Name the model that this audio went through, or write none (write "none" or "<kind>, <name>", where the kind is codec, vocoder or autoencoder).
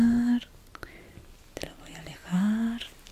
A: none